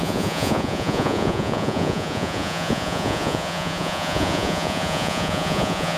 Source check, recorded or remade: remade